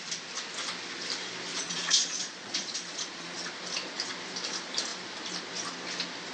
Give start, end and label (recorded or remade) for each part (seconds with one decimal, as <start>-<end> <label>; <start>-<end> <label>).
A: 0.0-1.5 recorded; 1.5-3.5 remade; 3.5-6.3 recorded